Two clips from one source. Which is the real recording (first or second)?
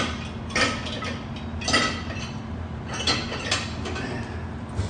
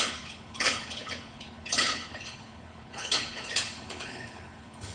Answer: first